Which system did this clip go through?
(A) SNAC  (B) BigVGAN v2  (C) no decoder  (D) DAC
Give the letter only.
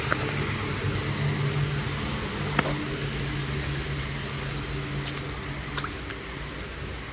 C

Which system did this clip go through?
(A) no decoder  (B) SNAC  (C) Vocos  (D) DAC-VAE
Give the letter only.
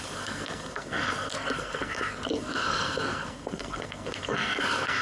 B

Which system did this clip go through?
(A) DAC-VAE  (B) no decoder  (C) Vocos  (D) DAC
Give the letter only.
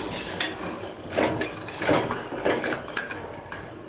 D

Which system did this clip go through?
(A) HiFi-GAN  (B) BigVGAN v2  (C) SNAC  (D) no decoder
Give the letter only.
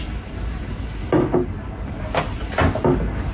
D